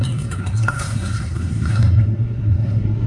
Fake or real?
fake